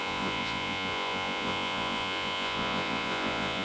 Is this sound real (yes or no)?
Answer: no